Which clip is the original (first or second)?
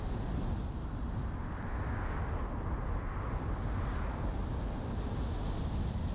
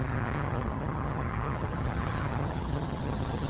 first